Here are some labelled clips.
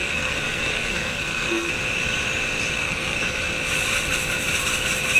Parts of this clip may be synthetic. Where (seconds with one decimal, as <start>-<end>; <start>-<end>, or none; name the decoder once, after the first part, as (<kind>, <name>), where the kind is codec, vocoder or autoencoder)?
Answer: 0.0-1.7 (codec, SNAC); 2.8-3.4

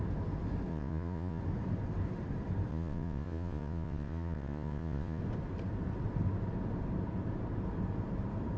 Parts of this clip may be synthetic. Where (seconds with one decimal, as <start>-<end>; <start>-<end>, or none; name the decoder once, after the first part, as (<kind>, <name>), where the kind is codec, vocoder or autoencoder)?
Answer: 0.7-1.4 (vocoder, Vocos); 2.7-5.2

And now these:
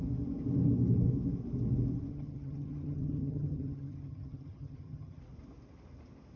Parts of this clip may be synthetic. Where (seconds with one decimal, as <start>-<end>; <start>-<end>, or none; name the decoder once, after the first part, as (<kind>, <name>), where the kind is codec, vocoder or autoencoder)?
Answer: 2.1-5.2 (vocoder, HiFi-GAN)